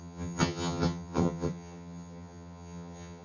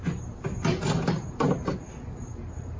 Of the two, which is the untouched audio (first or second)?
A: second